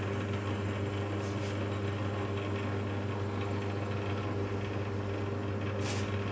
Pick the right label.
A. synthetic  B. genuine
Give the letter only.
B